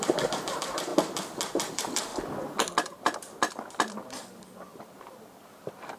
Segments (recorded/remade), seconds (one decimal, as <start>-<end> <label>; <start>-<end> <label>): 0.0-0.9 remade; 0.9-1.6 recorded; 1.6-2.1 remade; 2.1-6.0 recorded